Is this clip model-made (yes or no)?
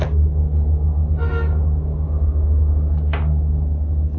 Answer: no